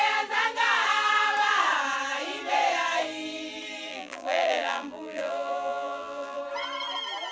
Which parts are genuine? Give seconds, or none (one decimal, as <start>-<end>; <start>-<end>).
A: 0.0-3.9; 6.4-7.3